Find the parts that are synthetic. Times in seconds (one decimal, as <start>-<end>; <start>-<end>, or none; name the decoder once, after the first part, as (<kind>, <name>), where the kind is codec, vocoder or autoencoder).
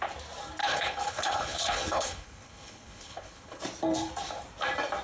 0.6-3.6 (codec, HILCodec)